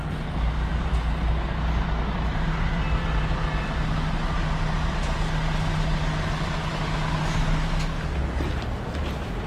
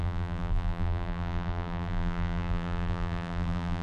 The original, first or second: first